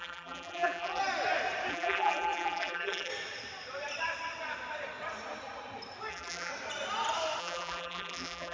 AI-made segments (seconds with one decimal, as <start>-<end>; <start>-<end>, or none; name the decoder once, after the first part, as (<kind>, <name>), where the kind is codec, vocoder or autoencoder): 0.0-1.0 (vocoder, BigVGAN v2); 1.7-3.1; 6.1-6.5; 7.4-8.5